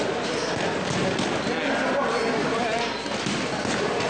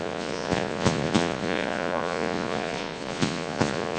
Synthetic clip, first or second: second